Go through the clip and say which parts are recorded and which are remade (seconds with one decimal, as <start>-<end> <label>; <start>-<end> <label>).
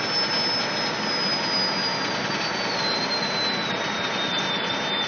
0.0-5.1 recorded